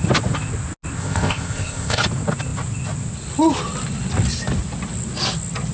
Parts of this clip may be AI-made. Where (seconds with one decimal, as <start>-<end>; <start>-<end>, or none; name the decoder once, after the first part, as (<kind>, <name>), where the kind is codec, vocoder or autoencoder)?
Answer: 1.0-2.0 (codec, ZipCodec)